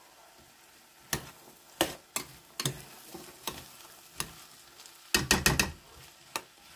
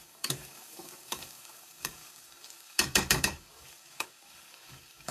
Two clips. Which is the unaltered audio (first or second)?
first